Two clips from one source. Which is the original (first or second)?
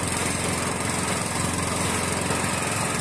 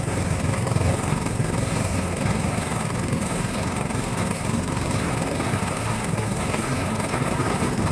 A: first